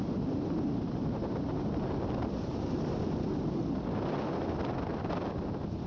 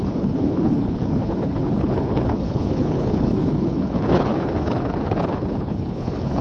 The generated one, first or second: second